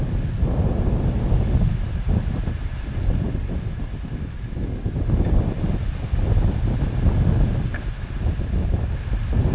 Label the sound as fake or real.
real